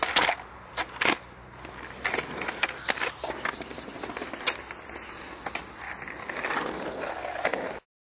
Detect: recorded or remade recorded